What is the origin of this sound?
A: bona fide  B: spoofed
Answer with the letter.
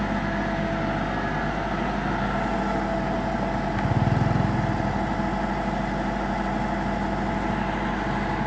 A